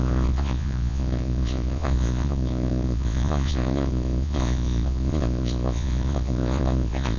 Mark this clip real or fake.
fake